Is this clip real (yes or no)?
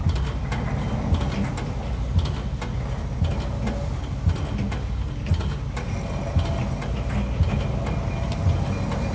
yes